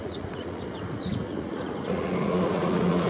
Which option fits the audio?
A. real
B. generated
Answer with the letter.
B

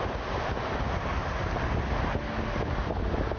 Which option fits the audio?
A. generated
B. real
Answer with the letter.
B